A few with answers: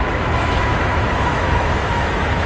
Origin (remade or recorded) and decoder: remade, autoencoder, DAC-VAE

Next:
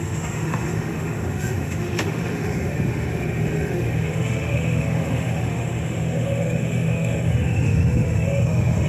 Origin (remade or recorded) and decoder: remade, autoencoder, DAC-VAE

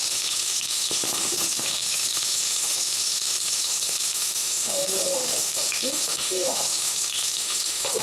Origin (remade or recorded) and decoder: remade, autoencoder, DAC-VAE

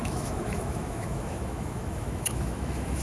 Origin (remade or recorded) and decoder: remade, autoencoder, DAC-VAE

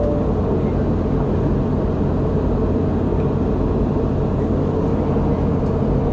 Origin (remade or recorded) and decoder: recorded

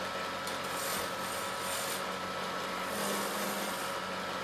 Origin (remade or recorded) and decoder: recorded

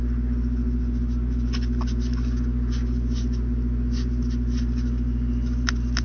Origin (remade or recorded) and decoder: recorded